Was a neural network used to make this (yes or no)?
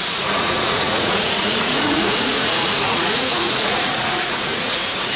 yes